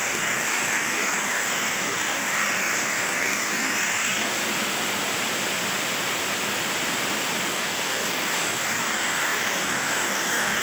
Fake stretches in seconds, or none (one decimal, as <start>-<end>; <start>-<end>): 0.0-4.4; 7.5-10.6